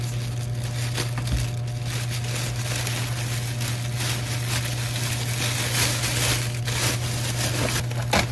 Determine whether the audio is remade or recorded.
recorded